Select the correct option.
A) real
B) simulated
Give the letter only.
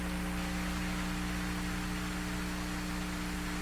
A